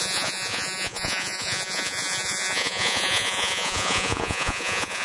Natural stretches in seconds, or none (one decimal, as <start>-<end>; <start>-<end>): none

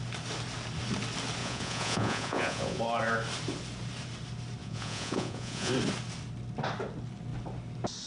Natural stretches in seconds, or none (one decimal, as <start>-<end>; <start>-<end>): 0.0-1.4; 2.8-4.6; 5.7-8.1

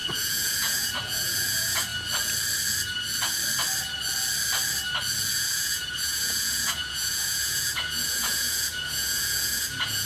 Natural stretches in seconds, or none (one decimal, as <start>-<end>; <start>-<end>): 1.9-5.3

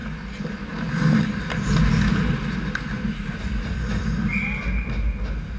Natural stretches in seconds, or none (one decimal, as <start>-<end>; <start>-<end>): 0.0-5.6